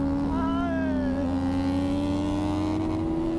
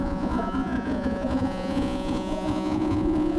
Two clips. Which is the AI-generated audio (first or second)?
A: second